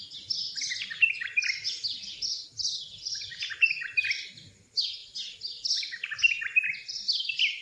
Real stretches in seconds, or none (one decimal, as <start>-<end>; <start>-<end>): 0.0-7.6